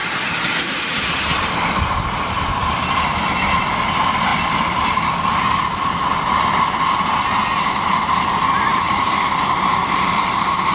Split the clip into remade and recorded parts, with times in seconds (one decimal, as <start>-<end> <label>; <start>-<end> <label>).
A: 0.0-8.7 recorded; 8.7-9.5 remade; 9.5-10.7 recorded